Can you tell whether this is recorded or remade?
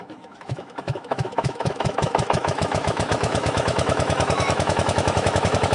remade